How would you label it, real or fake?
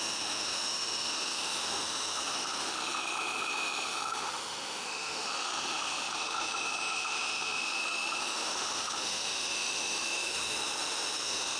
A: fake